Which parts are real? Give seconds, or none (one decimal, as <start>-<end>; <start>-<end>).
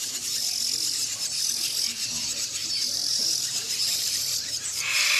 0.0-2.6